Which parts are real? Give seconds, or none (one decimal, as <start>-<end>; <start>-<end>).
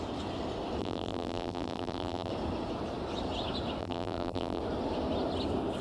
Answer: 0.0-0.8; 2.3-3.8; 4.6-5.8